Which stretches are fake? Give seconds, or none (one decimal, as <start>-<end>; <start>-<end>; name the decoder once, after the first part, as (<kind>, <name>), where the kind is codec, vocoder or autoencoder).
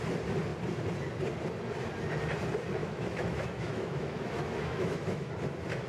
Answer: 2.8-5.3 (autoencoder, DAC-VAE)